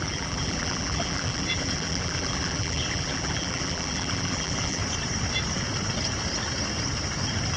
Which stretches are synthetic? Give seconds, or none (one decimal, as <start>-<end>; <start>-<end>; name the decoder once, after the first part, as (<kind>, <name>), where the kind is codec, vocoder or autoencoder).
0.0-4.8 (vocoder, BigVGAN v2)